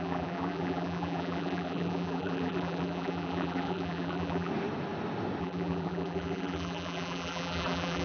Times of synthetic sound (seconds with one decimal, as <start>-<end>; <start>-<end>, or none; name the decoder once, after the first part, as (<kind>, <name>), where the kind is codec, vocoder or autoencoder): 0.0-4.5 (vocoder, BigVGAN v2); 5.4-8.0